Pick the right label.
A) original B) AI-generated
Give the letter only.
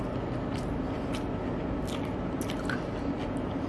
A